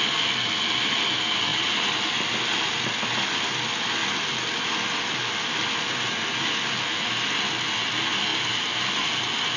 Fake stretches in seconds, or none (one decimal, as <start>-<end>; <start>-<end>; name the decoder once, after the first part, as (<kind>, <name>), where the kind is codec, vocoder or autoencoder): none